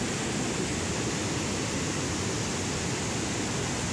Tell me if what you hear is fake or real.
real